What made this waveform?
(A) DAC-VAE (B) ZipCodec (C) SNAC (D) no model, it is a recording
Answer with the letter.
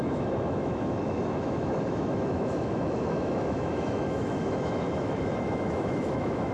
A